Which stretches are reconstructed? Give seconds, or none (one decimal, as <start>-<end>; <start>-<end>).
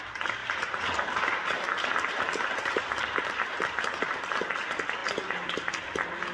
0.4-4.2